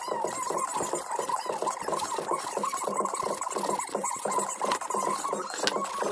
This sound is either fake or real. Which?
real